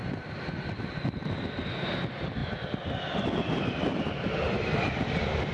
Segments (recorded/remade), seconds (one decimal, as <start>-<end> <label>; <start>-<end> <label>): 0.0-5.5 recorded

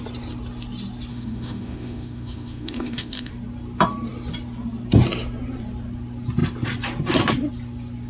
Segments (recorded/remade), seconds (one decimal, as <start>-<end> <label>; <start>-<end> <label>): 0.0-1.1 recorded; 1.1-3.3 remade; 3.3-8.1 recorded